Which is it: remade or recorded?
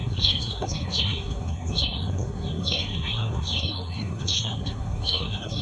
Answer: remade